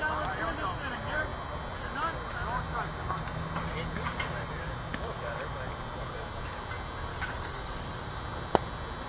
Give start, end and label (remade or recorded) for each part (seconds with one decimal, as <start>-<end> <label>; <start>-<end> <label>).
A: 0.0-7.1 recorded; 7.1-8.1 remade; 8.1-9.1 recorded